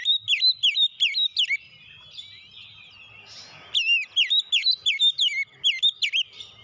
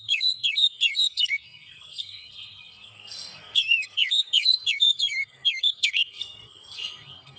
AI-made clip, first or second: second